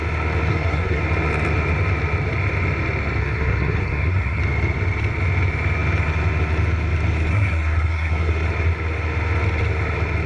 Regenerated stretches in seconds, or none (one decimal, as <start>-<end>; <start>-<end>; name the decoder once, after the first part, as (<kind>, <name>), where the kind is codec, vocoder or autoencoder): 0.5-1.0 (codec, SNAC); 3.2-4.4; 7.3-8.3